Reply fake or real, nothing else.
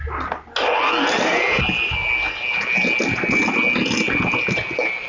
real